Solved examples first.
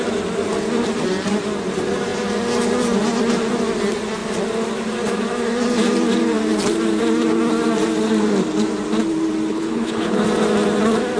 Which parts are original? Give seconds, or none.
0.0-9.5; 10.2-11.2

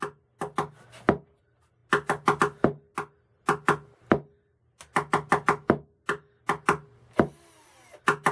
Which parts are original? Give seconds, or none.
0.0-8.3